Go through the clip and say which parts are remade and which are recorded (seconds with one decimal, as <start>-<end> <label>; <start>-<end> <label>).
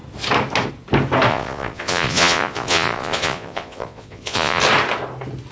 0.0-1.3 recorded; 1.3-4.6 remade; 4.6-5.5 recorded